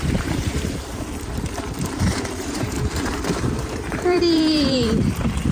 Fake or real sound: fake